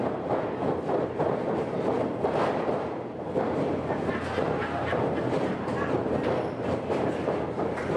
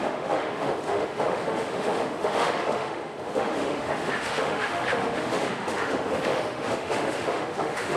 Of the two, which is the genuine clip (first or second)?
first